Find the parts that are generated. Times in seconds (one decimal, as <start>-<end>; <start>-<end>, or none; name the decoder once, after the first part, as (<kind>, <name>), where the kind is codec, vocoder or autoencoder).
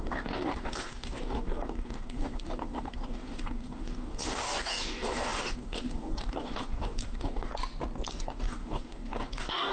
0.0-7.5 (codec, DAC); 8.1-9.7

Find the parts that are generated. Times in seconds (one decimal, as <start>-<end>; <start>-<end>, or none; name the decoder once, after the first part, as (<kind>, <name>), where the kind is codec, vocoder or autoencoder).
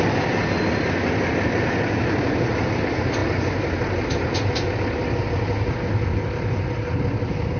none